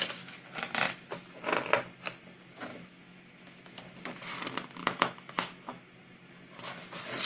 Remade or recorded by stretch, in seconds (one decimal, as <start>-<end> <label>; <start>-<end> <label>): 0.0-2.7 recorded; 2.7-3.8 remade; 3.8-4.8 recorded; 4.8-5.9 remade; 5.9-7.3 recorded